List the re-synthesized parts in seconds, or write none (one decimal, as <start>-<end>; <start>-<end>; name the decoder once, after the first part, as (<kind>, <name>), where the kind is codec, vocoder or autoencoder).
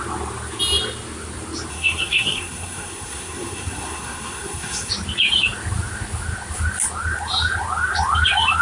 1.7-4.9 (codec, SNAC)